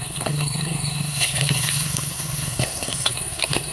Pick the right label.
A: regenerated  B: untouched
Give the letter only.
A